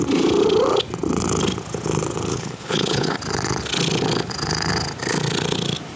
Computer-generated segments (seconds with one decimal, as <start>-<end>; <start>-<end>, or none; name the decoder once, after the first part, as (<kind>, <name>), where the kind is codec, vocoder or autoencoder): 2.3-3.2 (codec, HILCodec)